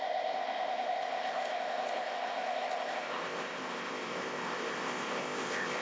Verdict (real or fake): fake